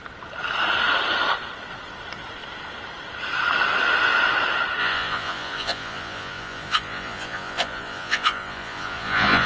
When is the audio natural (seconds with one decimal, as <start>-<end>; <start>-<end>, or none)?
0.0-4.8